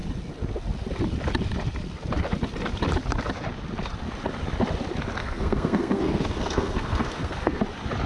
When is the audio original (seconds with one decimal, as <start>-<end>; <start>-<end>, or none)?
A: 0.0-5.2; 7.6-8.1